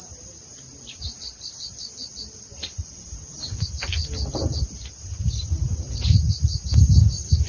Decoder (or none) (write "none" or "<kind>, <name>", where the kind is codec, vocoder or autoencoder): none